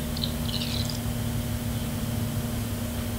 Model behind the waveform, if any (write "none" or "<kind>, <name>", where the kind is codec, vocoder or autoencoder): none